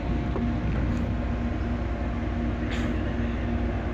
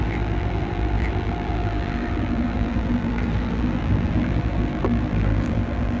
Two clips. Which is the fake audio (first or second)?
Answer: second